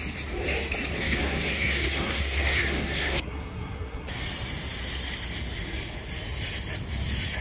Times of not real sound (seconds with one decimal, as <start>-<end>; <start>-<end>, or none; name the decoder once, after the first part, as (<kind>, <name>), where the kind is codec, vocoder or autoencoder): 1.0-4.1 (codec, SNAC)